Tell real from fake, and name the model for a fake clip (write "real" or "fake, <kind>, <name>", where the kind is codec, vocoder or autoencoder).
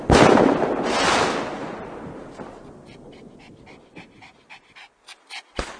real